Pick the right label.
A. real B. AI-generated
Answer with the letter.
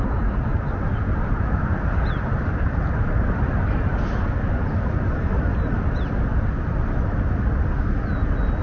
A